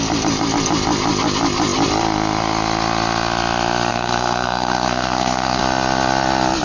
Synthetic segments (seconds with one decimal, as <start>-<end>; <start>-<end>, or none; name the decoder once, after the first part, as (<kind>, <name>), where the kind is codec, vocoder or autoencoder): 3.9-5.6 (codec, SNAC)